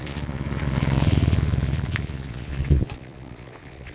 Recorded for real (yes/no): no